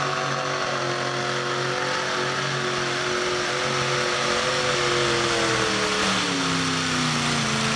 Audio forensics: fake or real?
real